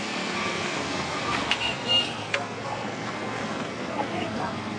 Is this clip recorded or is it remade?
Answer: remade